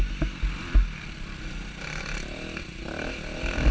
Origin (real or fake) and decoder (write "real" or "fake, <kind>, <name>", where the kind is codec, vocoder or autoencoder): real